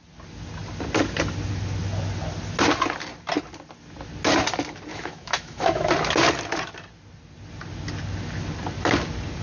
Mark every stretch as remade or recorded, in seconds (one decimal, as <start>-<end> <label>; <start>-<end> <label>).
0.0-4.9 recorded; 4.9-5.9 remade; 5.9-9.4 recorded